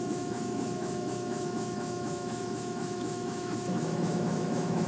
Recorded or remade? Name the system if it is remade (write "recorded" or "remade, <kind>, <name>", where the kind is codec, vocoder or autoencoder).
remade, autoencoder, DAC-VAE